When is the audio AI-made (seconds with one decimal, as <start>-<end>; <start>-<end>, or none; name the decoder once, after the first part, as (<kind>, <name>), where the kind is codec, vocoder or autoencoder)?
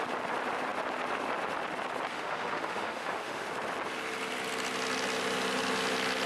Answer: 2.1-3.5 (autoencoder, DAC-VAE)